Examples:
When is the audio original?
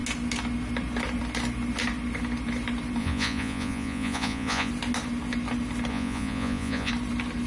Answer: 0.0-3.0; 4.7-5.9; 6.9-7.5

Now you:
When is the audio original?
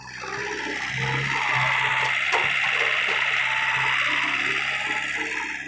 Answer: 0.0-5.7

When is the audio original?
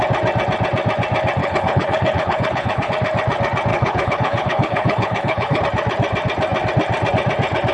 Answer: 0.0-1.4; 2.9-3.7; 5.6-7.7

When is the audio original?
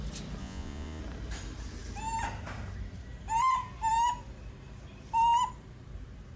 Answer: 0.0-0.4; 1.0-6.4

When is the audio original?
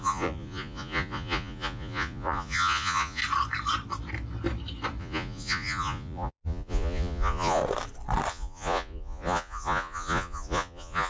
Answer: 3.2-5.0; 7.6-8.3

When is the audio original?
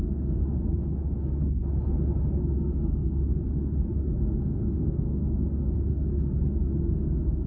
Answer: 0.4-2.4; 3.3-4.2; 6.1-6.8